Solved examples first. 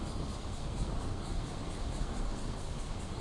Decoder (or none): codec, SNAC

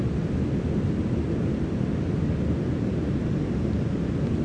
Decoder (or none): none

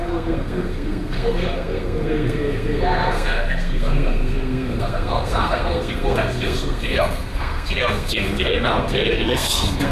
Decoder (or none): codec, SNAC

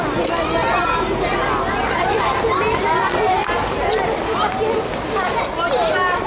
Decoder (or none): none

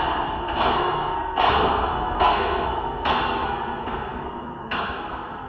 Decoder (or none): codec, SNAC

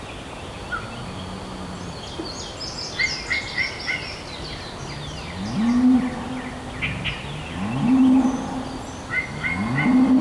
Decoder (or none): none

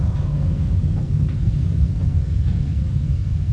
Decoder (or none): codec, SNAC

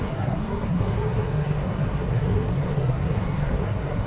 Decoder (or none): codec, SNAC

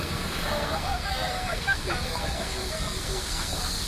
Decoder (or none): codec, SNAC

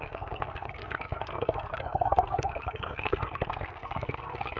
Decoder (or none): codec, SNAC